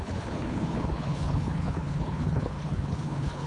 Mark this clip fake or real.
fake